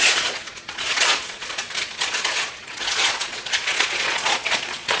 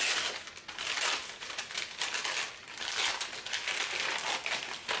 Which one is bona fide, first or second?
second